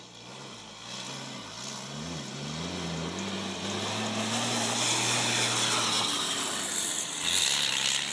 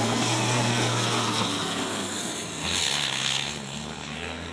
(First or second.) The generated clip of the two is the second